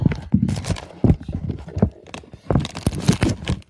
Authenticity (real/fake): real